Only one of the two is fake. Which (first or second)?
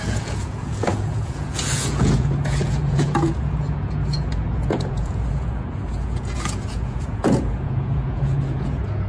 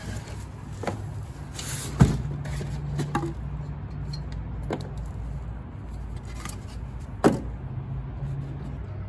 first